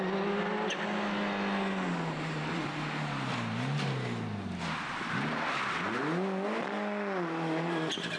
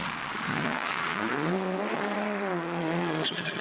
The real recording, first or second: first